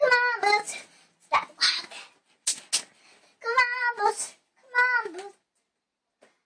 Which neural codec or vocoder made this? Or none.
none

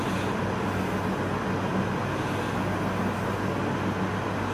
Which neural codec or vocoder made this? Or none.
none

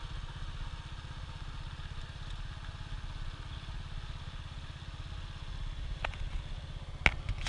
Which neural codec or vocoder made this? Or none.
none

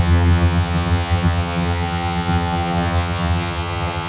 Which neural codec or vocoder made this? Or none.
vocoder, HiFi-GAN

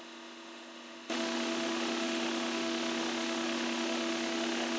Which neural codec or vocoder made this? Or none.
autoencoder, DAC-VAE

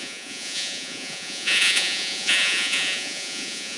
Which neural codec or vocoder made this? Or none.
vocoder, Vocos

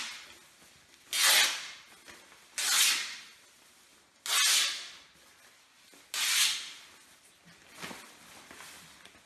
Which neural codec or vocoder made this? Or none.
none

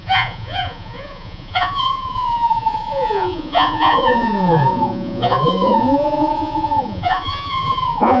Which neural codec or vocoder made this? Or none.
vocoder, Vocos